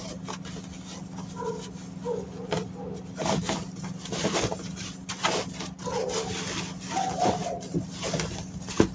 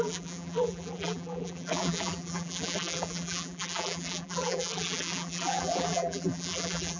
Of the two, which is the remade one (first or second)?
second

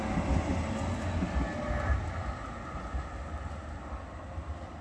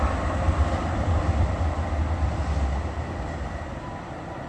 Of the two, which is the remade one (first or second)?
second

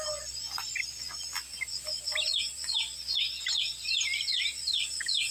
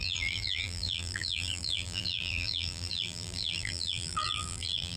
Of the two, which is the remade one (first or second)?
second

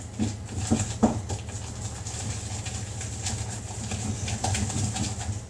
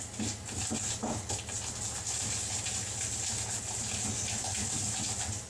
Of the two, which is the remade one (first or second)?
first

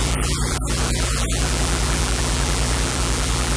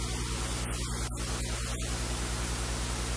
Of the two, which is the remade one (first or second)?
first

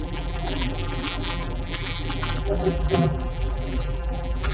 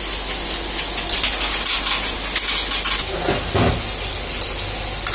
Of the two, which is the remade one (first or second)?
first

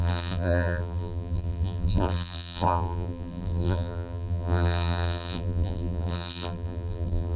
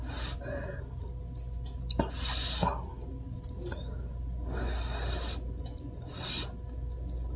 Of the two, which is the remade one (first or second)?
first